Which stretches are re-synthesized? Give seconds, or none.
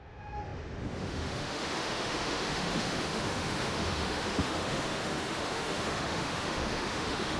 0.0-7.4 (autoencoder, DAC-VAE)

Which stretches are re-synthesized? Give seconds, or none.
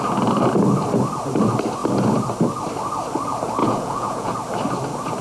3.6-4.3 (vocoder, Vocos)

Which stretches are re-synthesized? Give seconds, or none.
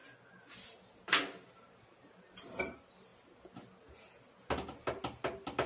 none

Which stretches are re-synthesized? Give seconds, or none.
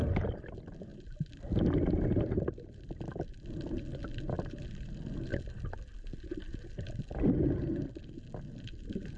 none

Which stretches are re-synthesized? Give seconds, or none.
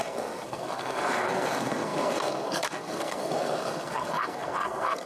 0.0-5.1 (codec, SNAC)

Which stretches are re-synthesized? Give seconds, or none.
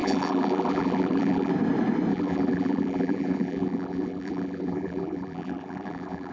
0.0-1.5 (vocoder, BigVGAN v2); 2.1-6.3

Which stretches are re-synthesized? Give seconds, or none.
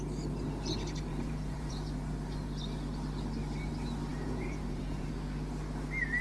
1.1-1.7 (vocoder, Vocos); 4.1-5.1